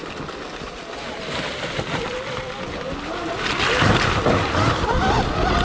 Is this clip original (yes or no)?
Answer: yes